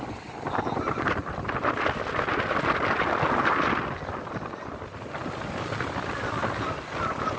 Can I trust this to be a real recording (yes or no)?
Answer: yes